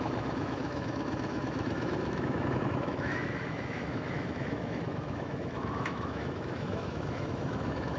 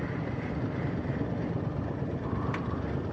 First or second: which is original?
second